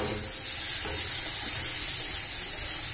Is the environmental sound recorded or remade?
recorded